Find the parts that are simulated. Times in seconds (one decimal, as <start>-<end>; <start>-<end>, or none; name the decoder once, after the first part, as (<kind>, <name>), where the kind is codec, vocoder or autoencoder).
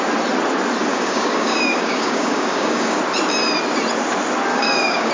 0.9-3.0 (codec, DAC); 4.5-5.1